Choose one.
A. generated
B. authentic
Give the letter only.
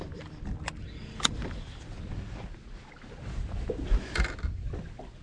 B